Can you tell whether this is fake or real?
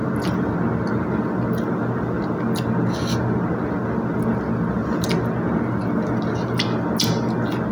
real